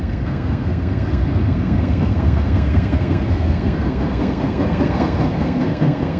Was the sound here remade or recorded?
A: remade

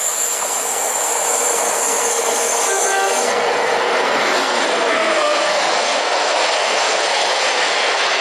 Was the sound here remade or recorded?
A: remade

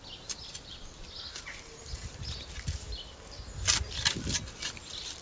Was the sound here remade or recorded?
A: recorded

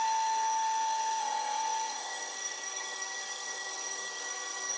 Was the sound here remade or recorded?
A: remade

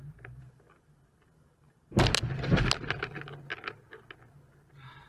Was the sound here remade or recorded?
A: recorded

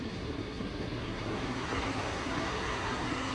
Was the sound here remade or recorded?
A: remade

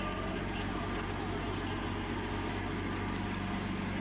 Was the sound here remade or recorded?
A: recorded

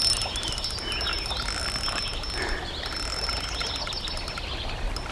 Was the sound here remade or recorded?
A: recorded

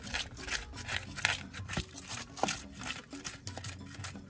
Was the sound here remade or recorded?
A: recorded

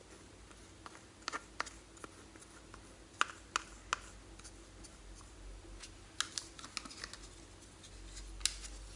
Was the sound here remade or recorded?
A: recorded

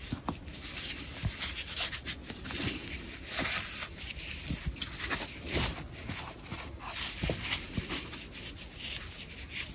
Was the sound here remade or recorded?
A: recorded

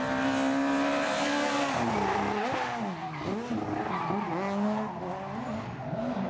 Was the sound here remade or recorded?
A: recorded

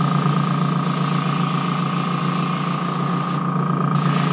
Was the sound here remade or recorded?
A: recorded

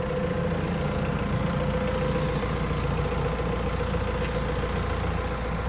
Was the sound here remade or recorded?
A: recorded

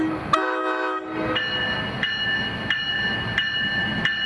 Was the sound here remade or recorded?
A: recorded